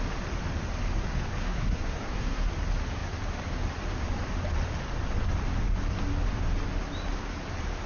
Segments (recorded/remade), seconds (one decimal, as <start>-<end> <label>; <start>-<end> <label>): 0.0-1.4 recorded; 1.4-2.5 remade; 2.5-7.9 recorded